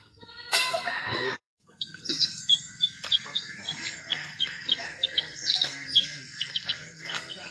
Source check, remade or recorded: remade